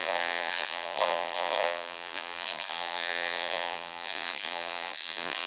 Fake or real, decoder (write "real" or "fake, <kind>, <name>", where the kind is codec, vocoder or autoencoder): fake, vocoder, BigVGAN v2